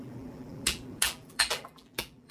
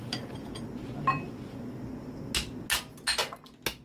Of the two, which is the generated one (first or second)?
first